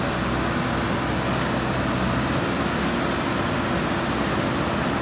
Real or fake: real